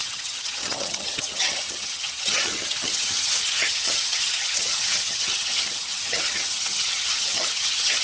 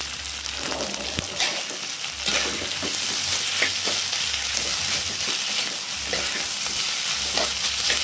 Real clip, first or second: second